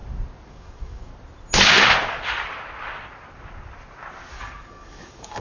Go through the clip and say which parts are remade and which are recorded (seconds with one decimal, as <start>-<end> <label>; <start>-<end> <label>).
0.0-0.5 recorded; 0.5-1.1 remade; 1.1-4.3 recorded; 4.3-5.4 remade